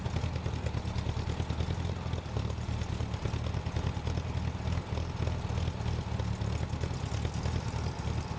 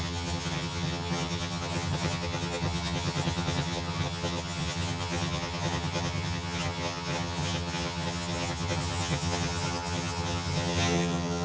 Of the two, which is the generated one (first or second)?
second